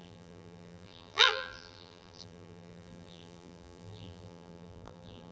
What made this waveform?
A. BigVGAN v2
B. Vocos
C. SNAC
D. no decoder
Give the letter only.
A